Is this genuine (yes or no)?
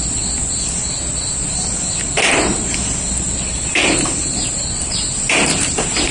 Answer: yes